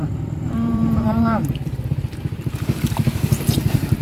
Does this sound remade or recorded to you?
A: remade